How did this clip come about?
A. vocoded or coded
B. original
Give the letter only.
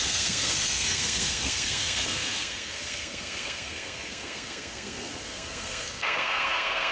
A